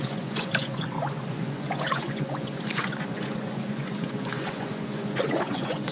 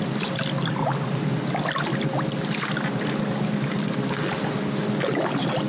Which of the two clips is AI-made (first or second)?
first